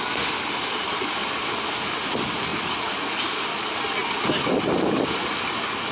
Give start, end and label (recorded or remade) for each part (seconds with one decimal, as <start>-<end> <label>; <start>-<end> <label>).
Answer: 0.0-1.2 recorded; 1.2-2.1 remade; 2.1-5.9 recorded